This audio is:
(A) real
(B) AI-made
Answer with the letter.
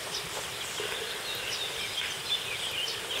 A